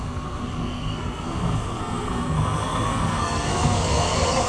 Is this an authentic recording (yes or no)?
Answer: no